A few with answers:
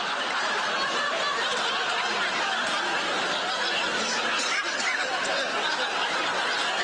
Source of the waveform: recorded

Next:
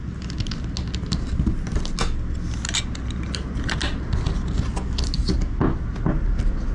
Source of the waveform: recorded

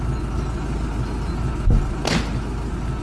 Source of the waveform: recorded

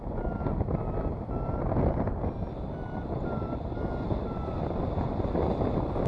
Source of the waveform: recorded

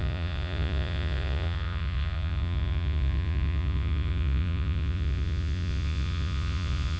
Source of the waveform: remade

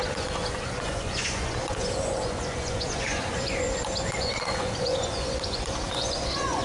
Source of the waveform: remade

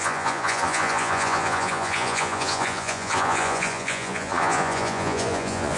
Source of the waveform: remade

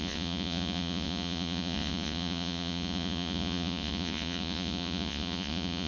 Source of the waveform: remade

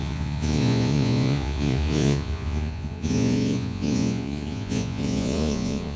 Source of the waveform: remade